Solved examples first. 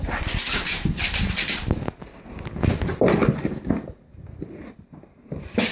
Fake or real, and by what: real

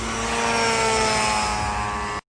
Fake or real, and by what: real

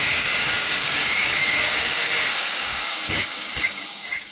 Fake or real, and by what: fake, codec, DAC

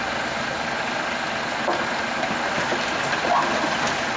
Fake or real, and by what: real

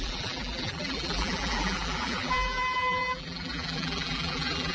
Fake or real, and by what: fake, vocoder, BigVGAN v2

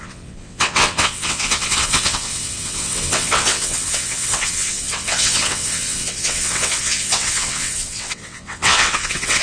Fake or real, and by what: fake, vocoder, WaveNeXt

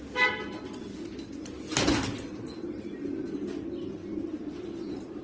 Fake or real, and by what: real